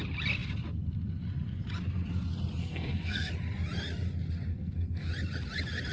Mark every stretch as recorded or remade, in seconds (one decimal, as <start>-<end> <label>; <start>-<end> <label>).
0.0-2.6 recorded; 2.6-3.3 remade; 3.3-4.5 recorded; 4.5-5.1 remade; 5.1-5.9 recorded